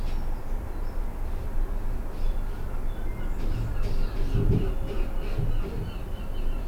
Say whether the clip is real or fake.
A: real